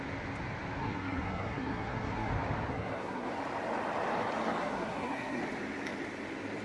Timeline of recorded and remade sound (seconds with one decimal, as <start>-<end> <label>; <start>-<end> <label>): 0.0-0.8 recorded; 0.8-2.3 remade; 2.3-2.7 recorded; 2.7-3.3 remade; 3.3-4.6 recorded; 4.6-5.4 remade; 5.4-6.6 recorded

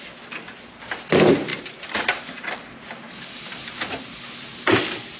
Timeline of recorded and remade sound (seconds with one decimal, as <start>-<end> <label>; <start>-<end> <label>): 0.0-5.2 recorded

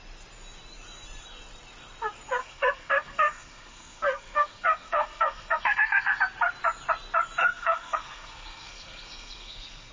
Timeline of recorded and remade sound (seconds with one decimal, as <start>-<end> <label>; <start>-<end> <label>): 0.0-2.4 recorded; 2.4-6.2 remade; 6.2-7.4 recorded; 7.4-9.9 remade

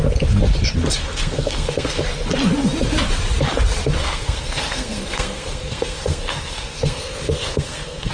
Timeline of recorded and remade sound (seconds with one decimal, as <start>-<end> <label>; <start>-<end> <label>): 0.0-1.0 recorded; 1.0-2.0 remade; 2.0-4.0 recorded; 4.0-8.1 remade

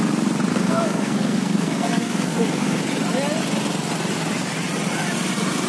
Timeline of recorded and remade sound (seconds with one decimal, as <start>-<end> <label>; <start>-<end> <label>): 0.0-0.5 recorded; 0.5-2.8 remade; 2.8-5.7 recorded

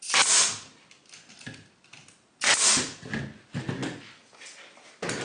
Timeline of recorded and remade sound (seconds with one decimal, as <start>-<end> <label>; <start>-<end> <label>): 0.0-5.2 recorded

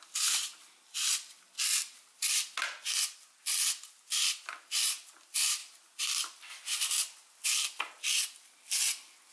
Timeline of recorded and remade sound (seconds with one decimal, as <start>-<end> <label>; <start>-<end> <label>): 0.0-9.3 recorded

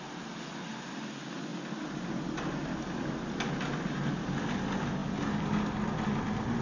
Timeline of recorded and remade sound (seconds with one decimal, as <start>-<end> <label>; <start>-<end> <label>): 0.0-6.6 recorded